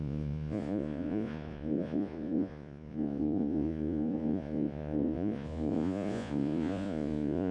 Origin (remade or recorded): remade